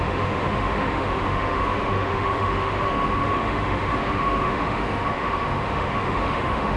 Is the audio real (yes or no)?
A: no